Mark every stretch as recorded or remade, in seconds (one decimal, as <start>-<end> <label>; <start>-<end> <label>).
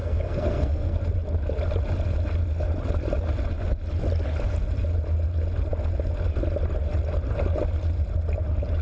0.0-1.0 remade; 1.0-8.8 recorded